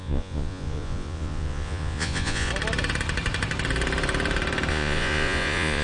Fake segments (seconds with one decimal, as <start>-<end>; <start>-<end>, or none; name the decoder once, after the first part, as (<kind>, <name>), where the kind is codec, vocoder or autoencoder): 0.0-2.5 (vocoder, Vocos); 4.7-5.8

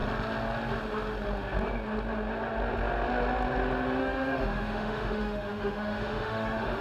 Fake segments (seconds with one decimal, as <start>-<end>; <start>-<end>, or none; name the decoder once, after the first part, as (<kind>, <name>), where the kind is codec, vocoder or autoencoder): 4.0-6.8 (autoencoder, DAC-VAE)